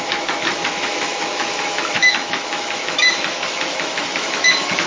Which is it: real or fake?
fake